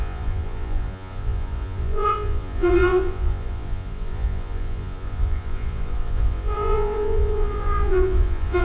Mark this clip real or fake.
fake